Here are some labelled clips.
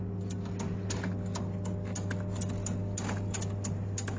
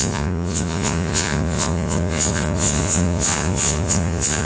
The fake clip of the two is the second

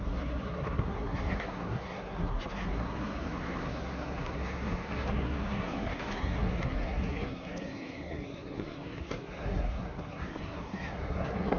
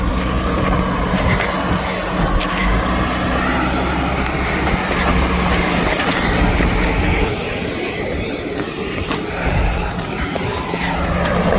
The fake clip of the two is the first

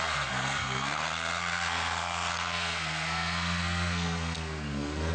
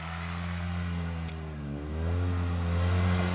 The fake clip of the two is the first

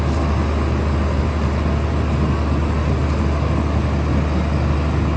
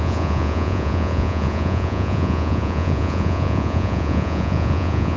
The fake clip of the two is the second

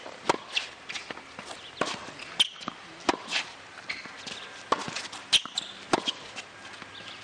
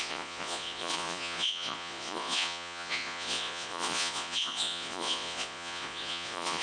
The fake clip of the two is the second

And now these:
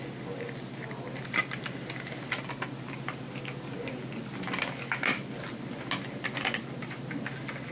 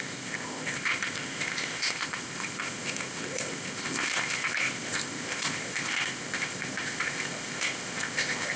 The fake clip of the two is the second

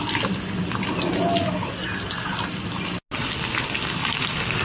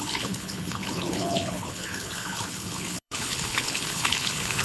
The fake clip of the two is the second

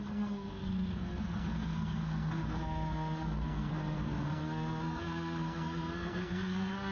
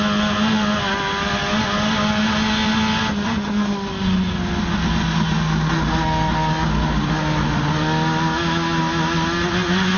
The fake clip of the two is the first